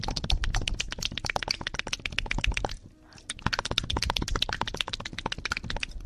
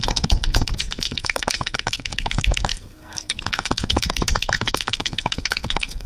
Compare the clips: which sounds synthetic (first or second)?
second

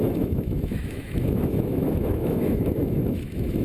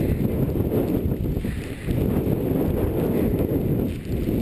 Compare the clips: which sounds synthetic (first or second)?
first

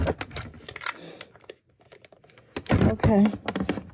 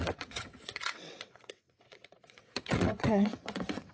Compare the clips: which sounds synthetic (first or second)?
second